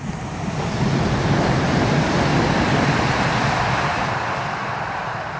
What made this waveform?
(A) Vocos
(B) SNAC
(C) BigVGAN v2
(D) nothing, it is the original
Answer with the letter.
D